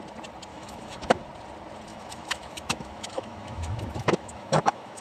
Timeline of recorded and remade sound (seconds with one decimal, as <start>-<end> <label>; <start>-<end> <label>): 0.0-0.5 recorded; 0.5-1.2 remade; 1.2-1.9 recorded; 1.9-5.0 remade